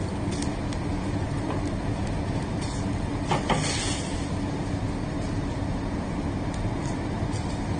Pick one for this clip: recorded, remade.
recorded